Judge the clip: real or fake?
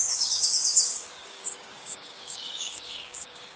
fake